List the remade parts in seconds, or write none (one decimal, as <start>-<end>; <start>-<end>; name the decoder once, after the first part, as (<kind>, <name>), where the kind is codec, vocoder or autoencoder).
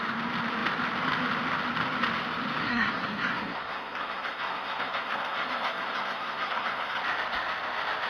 2.6-7.0 (codec, SNAC)